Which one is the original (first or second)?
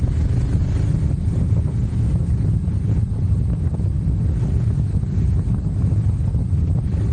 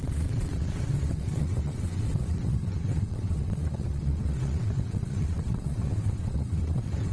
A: first